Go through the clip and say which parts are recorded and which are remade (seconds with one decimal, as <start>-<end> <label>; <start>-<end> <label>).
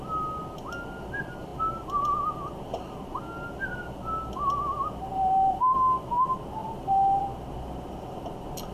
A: 0.0-6.6 recorded; 6.6-7.2 remade; 7.2-8.7 recorded